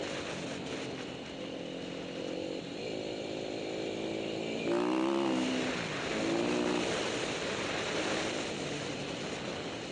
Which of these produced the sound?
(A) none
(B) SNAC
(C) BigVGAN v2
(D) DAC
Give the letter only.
A